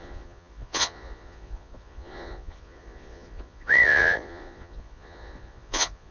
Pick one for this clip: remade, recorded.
remade